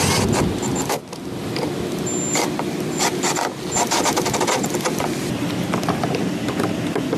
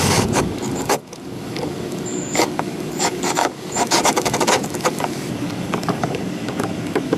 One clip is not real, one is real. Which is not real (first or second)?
second